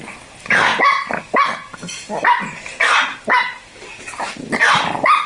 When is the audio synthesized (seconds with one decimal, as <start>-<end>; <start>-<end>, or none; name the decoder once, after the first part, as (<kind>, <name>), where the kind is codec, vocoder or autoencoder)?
3.6-4.4 (vocoder, BigVGAN v2)